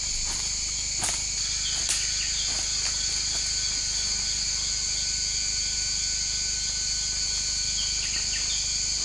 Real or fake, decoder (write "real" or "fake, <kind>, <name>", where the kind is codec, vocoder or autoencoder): real